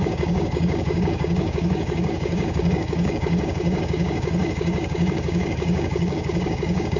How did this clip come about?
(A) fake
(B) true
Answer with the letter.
A